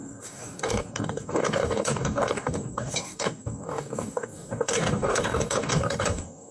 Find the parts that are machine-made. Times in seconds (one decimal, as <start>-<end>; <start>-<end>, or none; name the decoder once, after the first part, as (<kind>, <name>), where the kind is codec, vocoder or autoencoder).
0.0-6.5 (codec, DAC)